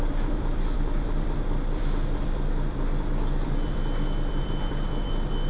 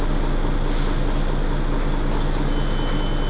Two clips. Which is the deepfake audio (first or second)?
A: first